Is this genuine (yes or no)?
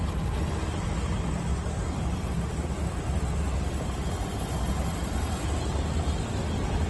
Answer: yes